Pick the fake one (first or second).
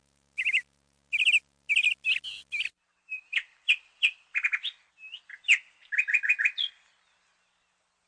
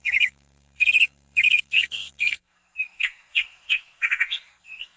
second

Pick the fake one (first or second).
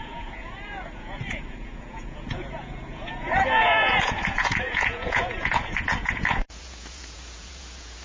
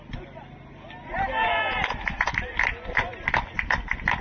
first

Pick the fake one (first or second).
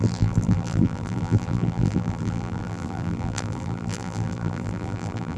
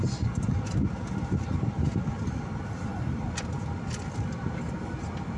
first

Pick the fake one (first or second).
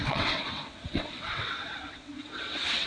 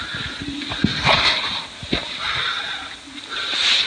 first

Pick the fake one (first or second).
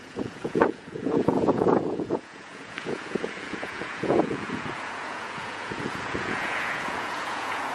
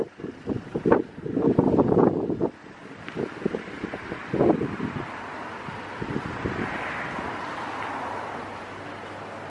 first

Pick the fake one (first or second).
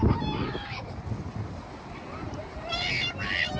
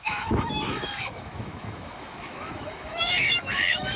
second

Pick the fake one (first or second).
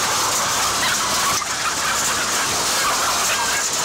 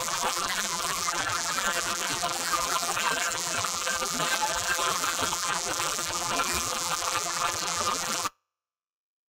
second